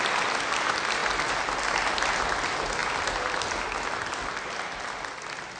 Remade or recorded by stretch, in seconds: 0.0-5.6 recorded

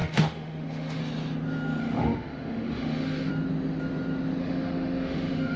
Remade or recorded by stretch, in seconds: 0.0-1.0 remade; 1.0-1.8 recorded; 1.8-3.3 remade; 3.3-4.4 recorded; 4.4-5.6 remade

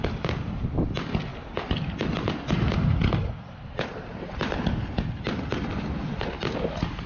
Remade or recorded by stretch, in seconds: 0.0-7.1 recorded

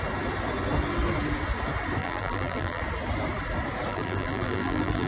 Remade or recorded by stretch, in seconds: 0.0-2.0 recorded; 2.0-2.8 remade; 2.8-3.9 recorded; 3.9-5.1 remade

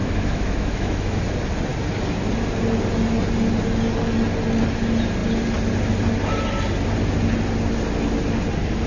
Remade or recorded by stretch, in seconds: 0.0-1.2 remade; 1.2-8.9 recorded

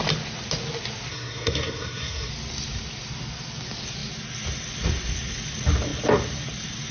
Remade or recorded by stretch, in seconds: 0.0-1.1 recorded; 1.1-2.3 remade; 2.3-6.9 recorded

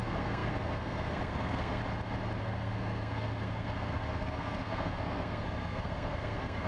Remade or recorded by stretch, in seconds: 0.0-1.8 remade; 1.8-2.4 recorded; 2.4-6.7 remade

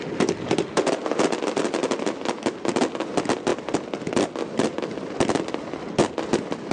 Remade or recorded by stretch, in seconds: 0.0-6.7 recorded